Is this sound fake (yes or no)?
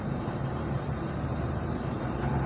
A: yes